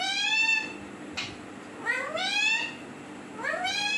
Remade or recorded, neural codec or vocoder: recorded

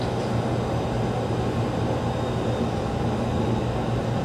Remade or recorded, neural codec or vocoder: recorded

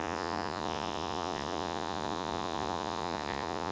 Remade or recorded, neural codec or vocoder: remade, vocoder, Vocos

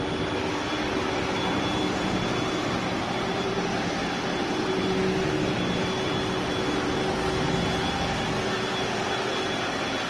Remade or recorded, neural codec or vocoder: recorded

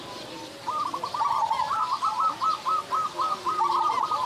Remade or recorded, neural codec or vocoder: recorded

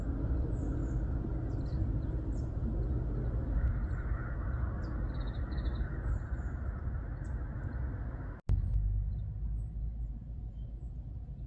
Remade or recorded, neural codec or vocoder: recorded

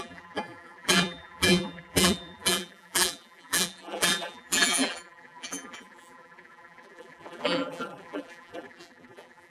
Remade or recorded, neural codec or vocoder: remade, vocoder, BigVGAN v2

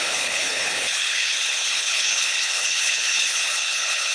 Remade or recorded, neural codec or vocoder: remade, codec, HILCodec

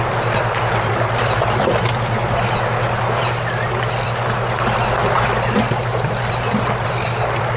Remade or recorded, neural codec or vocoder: recorded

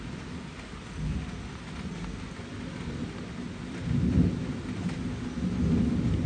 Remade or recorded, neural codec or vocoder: recorded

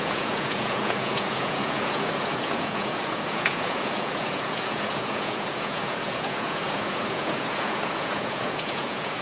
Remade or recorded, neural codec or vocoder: remade, vocoder, Vocos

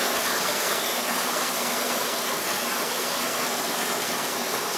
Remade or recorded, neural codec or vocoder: remade, codec, SNAC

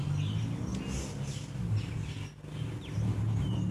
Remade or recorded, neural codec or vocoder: recorded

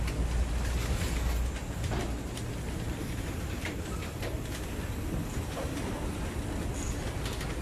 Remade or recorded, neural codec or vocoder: recorded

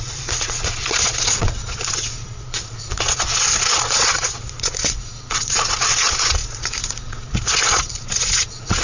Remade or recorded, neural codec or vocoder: remade, vocoder, Vocos